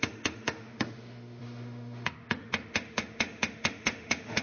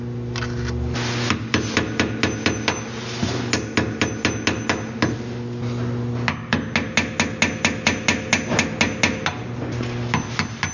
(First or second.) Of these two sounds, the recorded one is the second